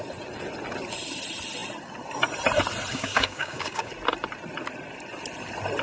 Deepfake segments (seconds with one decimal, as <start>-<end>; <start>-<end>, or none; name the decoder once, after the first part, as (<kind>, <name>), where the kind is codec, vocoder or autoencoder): 2.9-3.9 (codec, DAC)